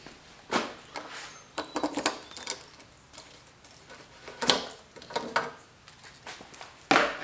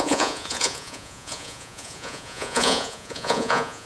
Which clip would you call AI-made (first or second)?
second